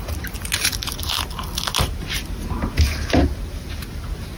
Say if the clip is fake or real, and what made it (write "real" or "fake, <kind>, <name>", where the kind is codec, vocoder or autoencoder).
real